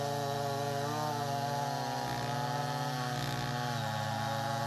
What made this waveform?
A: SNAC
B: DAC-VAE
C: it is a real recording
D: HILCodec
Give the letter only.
C